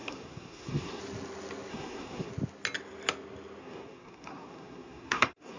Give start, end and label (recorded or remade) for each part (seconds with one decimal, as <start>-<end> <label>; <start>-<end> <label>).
0.0-1.0 remade; 1.0-1.7 recorded; 1.7-2.3 remade; 2.3-3.6 recorded; 3.6-5.6 remade